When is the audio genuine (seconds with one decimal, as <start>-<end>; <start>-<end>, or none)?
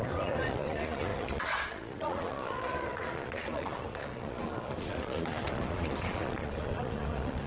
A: none